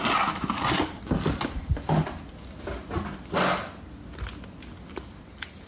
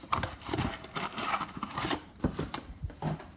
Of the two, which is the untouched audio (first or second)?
first